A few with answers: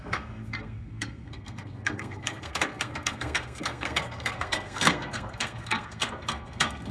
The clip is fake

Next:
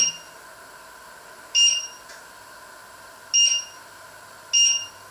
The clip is real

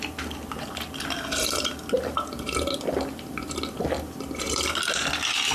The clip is real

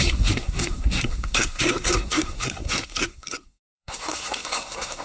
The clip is fake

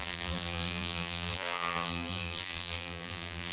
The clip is fake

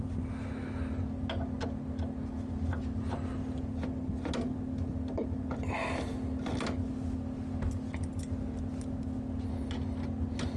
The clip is real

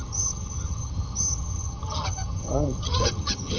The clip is fake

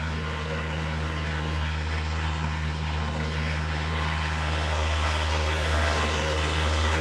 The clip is fake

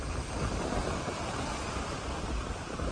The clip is real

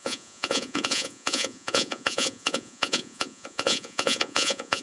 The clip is fake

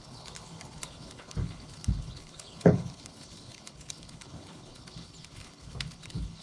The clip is fake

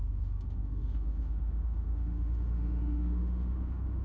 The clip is fake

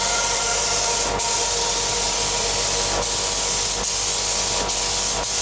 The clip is real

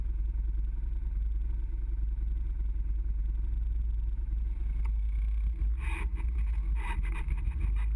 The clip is real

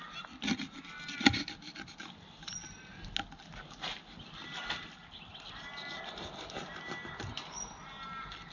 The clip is real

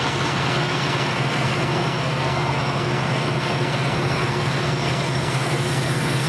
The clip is fake